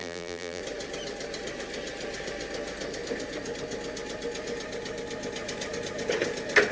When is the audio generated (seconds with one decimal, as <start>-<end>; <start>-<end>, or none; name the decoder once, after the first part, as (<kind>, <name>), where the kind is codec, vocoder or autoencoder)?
0.0-0.6 (vocoder, BigVGAN v2)